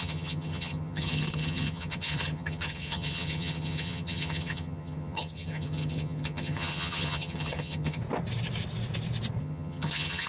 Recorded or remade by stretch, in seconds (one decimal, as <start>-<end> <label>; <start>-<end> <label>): 0.0-8.0 remade; 8.0-9.4 recorded; 9.4-10.3 remade